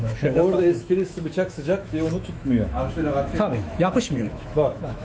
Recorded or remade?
remade